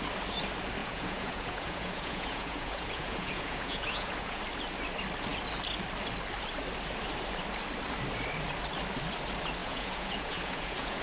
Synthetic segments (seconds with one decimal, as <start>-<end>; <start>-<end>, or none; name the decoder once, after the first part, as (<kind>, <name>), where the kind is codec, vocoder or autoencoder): 0.8-4.4 (vocoder, Vocos); 9.6-11.0